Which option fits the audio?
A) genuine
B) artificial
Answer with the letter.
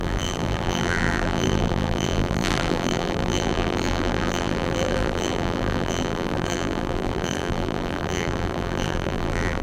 B